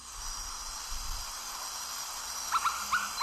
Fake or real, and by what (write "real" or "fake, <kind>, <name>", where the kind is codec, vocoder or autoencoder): real